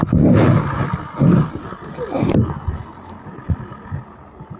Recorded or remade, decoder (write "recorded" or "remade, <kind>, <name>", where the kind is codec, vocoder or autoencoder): recorded